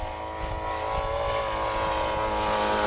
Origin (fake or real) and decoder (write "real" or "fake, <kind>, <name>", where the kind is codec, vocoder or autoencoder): real